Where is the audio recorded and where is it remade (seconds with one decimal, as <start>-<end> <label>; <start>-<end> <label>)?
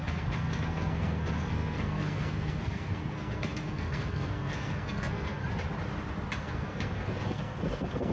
0.0-5.4 remade; 5.4-6.4 recorded; 6.4-8.1 remade